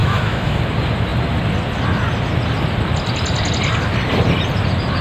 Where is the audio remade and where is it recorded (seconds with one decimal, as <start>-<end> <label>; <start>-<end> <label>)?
0.0-0.6 remade; 0.6-5.0 recorded